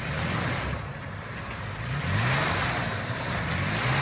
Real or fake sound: real